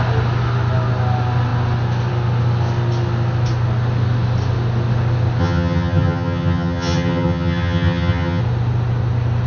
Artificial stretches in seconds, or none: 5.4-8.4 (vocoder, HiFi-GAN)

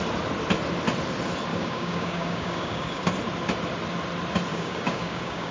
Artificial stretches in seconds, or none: 1.5-3.1 (codec, DAC); 4.5-5.5

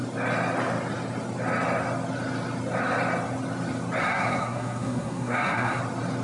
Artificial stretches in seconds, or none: 4.0-5.8 (codec, SNAC)

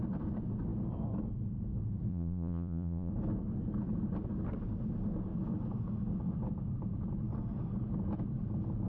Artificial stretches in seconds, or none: 2.1-3.1 (vocoder, Vocos)

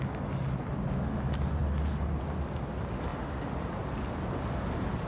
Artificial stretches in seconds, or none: none

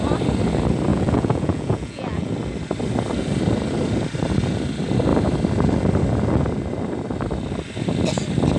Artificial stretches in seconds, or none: 0.9-2.3 (vocoder, Vocos)

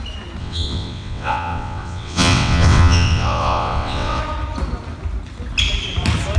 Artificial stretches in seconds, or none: 0.4-4.2 (vocoder, WaveNeXt)